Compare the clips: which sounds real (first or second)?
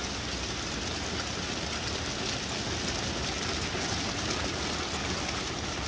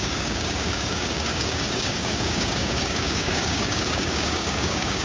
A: first